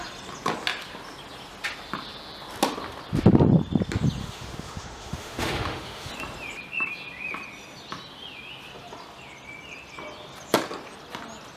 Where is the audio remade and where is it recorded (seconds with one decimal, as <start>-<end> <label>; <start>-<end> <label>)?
0.0-4.2 recorded; 4.2-6.1 remade; 6.1-11.6 recorded